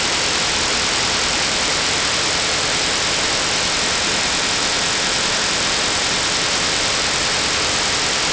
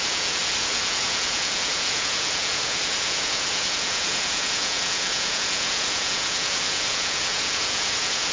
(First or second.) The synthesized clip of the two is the second